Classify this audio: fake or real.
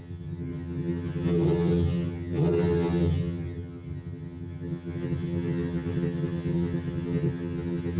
fake